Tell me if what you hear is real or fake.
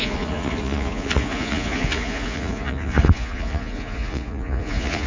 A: fake